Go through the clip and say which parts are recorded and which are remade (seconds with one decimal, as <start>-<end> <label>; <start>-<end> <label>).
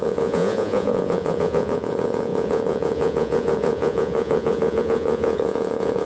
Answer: 0.0-6.1 remade